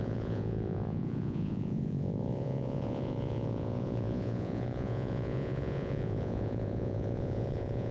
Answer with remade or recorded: remade